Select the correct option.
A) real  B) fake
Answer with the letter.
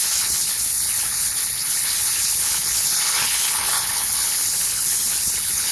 B